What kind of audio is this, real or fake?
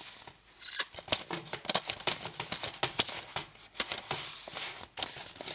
real